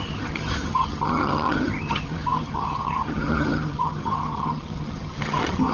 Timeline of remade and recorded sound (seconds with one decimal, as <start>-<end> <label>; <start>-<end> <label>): 0.0-5.7 remade